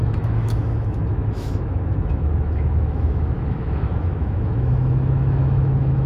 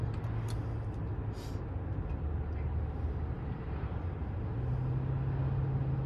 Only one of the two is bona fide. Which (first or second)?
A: second